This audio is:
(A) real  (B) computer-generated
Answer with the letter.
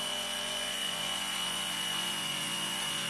B